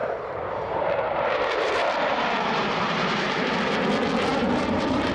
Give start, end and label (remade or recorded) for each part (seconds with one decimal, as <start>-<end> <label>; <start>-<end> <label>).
0.0-1.7 remade; 1.7-2.1 recorded; 2.1-3.5 remade; 3.5-4.3 recorded; 4.3-5.1 remade